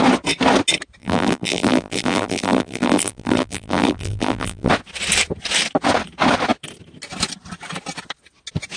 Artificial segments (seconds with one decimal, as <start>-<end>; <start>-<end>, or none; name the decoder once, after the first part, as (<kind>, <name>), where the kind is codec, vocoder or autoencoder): 1.0-4.7 (vocoder, BigVGAN v2)